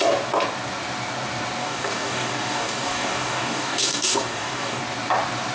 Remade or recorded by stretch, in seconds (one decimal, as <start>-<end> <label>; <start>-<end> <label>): 0.0-1.6 recorded; 1.6-4.8 remade; 4.8-5.5 recorded